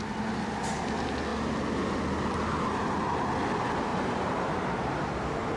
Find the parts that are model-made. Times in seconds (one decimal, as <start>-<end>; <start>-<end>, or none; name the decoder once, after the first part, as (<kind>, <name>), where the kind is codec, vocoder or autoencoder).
3.9-4.9 (vocoder, BigVGAN v2)